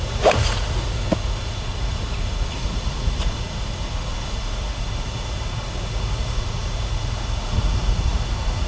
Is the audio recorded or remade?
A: remade